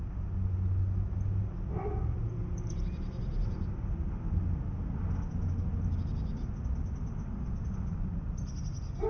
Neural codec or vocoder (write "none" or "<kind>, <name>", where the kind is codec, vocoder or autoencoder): none